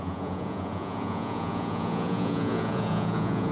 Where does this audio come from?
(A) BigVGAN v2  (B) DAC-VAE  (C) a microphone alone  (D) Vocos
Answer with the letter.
D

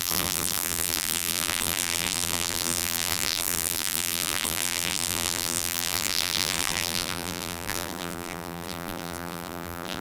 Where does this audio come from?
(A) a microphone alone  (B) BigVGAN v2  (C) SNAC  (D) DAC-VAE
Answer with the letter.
B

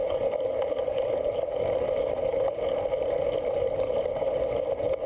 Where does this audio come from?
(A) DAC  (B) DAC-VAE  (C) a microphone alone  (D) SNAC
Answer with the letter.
C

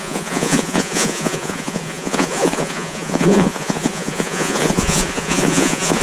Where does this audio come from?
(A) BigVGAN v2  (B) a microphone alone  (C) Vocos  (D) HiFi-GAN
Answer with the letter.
C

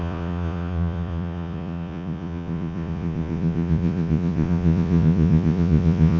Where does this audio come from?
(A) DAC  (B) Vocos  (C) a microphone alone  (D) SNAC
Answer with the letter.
B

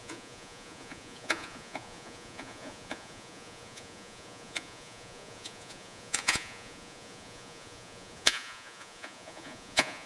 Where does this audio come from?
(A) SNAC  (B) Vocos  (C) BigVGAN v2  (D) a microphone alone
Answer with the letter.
B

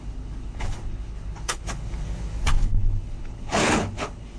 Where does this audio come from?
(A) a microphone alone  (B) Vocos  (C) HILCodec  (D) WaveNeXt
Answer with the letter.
C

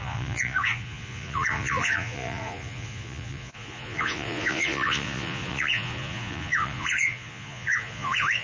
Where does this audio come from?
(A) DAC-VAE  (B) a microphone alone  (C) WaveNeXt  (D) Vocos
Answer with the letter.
D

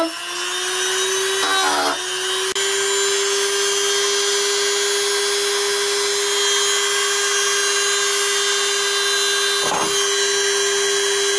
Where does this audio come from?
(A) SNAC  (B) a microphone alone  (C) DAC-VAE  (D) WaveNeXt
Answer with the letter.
B